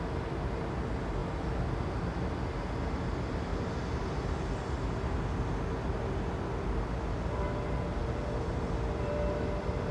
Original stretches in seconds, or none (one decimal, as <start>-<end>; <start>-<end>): 0.0-3.5; 4.7-9.9